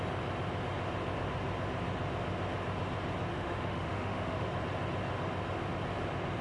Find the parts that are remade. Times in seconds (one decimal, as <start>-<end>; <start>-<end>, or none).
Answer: 3.3-4.4